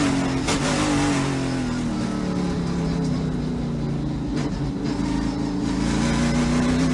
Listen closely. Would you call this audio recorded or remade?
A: recorded